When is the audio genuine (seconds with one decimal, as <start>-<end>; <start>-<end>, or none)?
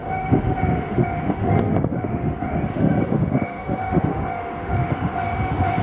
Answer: none